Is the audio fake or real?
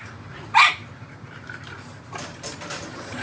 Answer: real